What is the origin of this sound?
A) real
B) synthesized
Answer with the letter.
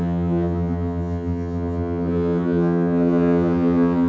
B